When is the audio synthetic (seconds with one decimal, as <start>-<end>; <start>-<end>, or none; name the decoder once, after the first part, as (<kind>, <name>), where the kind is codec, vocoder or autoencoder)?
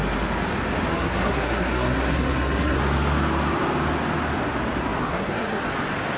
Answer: 0.9-2.8 (codec, SNAC); 5.0-5.6